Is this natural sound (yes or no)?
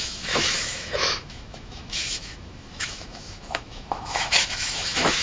no